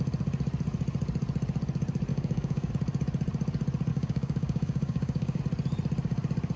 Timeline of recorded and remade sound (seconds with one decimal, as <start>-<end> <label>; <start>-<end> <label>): 0.0-2.1 recorded; 2.1-2.7 remade; 2.7-3.9 recorded; 3.9-5.4 remade; 5.4-6.6 recorded